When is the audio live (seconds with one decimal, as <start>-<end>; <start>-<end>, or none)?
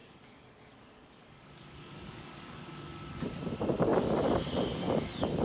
3.2-5.4